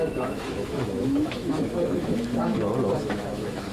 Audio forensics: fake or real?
fake